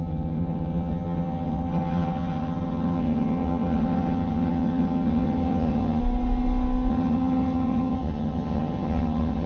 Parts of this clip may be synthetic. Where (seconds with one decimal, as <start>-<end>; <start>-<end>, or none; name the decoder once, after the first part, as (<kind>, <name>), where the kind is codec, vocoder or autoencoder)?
0.0-6.0 (vocoder, HiFi-GAN); 6.9-9.5